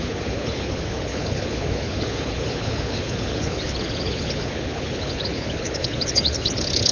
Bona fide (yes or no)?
no